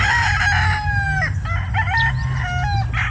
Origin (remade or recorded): recorded